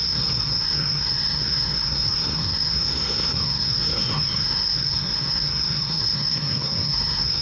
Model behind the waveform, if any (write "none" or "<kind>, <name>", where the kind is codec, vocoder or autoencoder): codec, SNAC